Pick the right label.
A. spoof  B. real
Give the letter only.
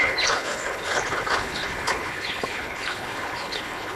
A